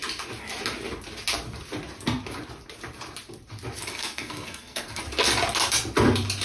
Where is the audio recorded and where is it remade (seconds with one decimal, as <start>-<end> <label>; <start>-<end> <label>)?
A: 0.0-3.9 recorded; 3.9-5.0 remade; 5.0-6.4 recorded